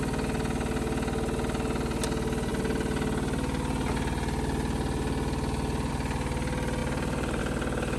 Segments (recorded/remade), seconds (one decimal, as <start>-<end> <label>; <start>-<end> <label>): 0.0-6.8 recorded; 6.8-7.4 remade; 7.4-8.0 recorded